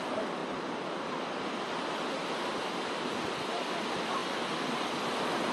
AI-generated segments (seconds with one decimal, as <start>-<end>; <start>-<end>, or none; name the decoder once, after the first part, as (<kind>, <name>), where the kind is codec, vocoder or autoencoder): none